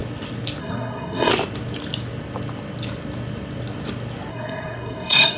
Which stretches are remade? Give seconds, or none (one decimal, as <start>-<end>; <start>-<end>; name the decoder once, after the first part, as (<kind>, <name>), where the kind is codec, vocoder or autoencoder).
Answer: 0.6-1.3 (codec, SNAC); 4.3-5.4